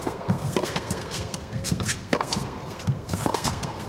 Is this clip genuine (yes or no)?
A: no